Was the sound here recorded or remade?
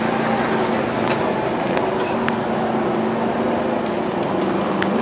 recorded